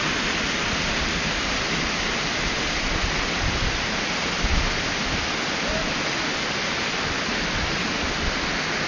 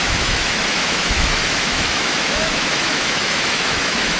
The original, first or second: first